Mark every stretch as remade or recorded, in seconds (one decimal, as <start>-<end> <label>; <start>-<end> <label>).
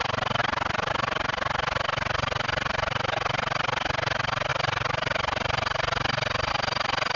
0.0-7.2 recorded